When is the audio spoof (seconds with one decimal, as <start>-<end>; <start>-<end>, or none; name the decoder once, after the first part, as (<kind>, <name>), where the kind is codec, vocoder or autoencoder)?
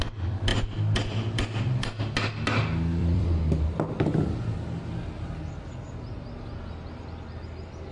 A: 0.5-2.0 (vocoder, BigVGAN v2); 3.0-3.7